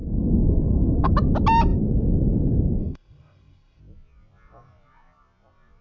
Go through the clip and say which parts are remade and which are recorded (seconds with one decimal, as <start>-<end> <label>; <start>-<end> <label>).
0.0-1.1 remade; 1.1-2.8 recorded; 2.8-3.8 remade; 3.8-5.8 recorded